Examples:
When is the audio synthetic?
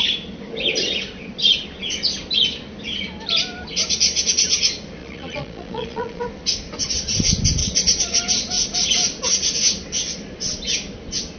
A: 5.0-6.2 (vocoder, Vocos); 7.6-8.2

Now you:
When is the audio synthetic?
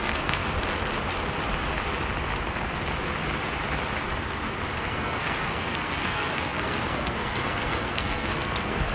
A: 0.0-0.4 (codec, SNAC); 4.8-8.9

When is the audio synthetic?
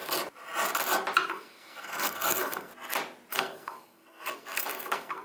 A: 1.3-2.7 (codec, SNAC); 3.3-5.2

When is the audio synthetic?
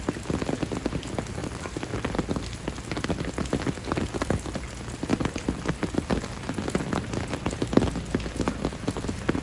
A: 1.4-2.1 (vocoder, BigVGAN v2); 5.1-7.2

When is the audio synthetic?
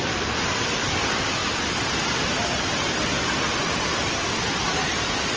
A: 0.0-1.4 (vocoder, BigVGAN v2); 4.1-5.4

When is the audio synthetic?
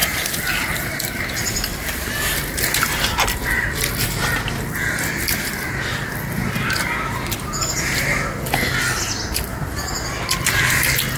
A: 0.0-9.5 (vocoder, BigVGAN v2); 10.1-11.2